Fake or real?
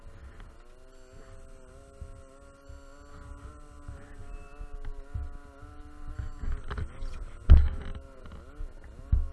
real